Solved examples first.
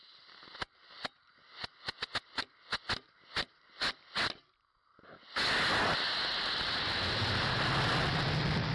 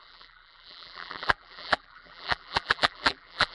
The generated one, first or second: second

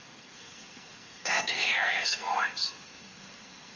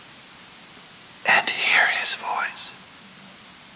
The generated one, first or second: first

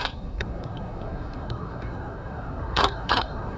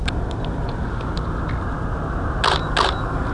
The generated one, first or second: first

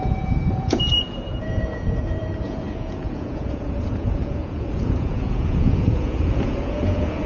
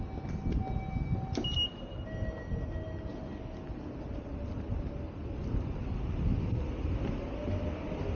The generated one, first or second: first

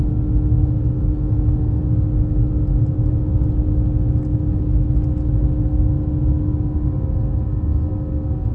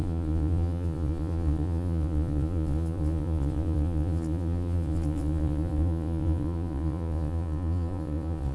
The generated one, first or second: second